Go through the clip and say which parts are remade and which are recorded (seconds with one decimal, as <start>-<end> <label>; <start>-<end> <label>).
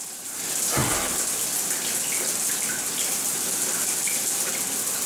0.0-5.1 recorded